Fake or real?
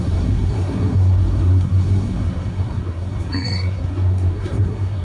fake